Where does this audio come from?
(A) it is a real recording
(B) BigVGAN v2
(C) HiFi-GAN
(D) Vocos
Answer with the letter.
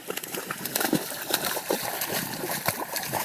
B